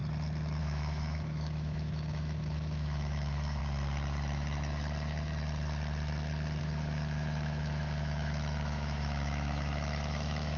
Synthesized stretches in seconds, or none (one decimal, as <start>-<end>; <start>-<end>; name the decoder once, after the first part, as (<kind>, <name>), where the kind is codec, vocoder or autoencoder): 0.6-3.6 (autoencoder, DAC-VAE); 6.6-10.6